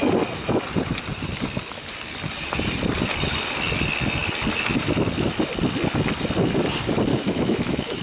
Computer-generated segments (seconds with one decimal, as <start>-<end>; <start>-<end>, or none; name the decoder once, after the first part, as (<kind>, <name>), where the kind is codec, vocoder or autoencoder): 7.1-8.0 (autoencoder, DAC-VAE)